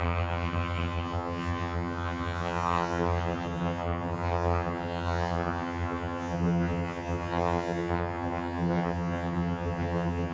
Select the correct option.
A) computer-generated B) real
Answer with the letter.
A